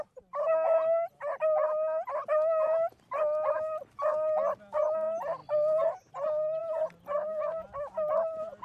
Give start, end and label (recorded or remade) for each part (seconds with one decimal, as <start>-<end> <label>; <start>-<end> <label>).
0.0-8.6 recorded